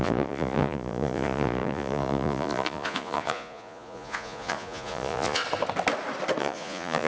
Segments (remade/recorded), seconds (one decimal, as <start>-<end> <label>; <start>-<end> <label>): 0.0-5.4 remade; 5.4-6.4 recorded; 6.4-7.1 remade